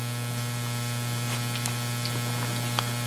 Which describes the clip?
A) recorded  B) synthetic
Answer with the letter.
A